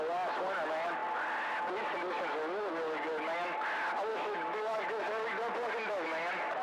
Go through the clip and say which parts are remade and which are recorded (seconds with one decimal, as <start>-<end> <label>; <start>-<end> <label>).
0.0-4.1 recorded; 4.1-4.8 remade; 4.8-6.6 recorded